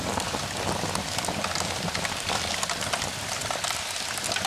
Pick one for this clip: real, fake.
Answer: real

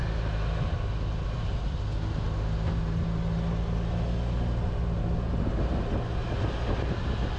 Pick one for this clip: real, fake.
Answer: real